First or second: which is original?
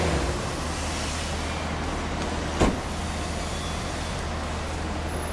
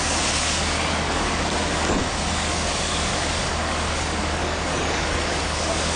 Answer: first